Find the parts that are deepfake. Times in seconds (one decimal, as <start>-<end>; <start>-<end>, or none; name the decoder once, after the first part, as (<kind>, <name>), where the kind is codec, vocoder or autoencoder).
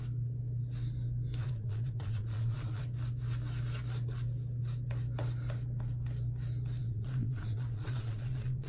1.4-2.8 (vocoder, Vocos); 6.8-8.7